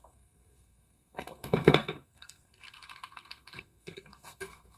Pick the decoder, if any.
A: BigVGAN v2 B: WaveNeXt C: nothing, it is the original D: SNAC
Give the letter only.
D